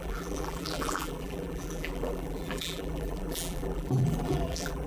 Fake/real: fake